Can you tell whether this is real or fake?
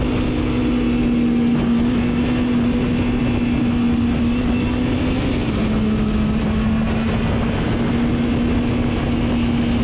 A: real